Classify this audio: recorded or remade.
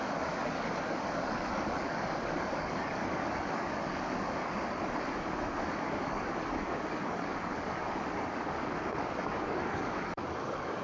remade